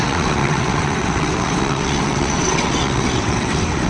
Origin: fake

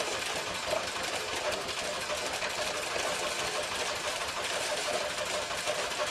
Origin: real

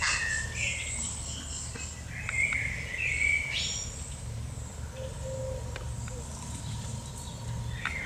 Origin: real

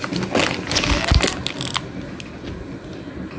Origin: real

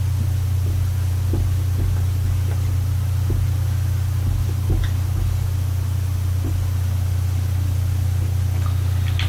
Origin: real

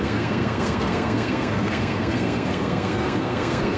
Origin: fake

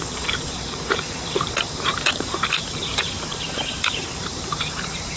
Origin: fake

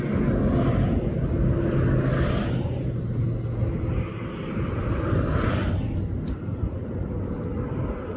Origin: real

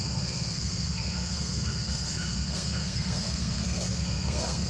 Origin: fake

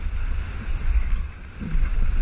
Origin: fake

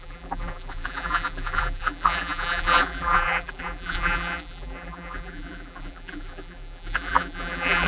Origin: fake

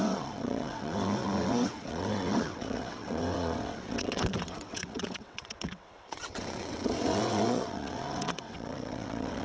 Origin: fake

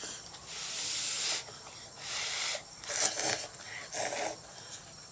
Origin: real